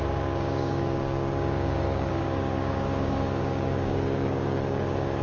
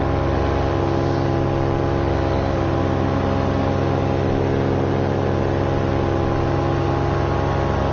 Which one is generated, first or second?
first